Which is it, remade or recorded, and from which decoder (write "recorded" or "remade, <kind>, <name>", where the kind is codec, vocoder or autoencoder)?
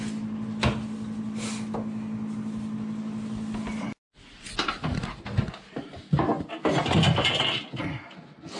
recorded